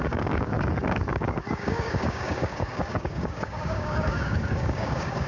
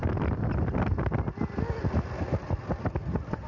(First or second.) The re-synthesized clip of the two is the first